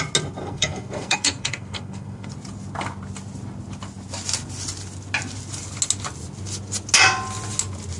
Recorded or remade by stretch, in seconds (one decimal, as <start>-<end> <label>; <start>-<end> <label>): 0.0-0.4 recorded; 0.4-2.3 remade; 2.3-8.0 recorded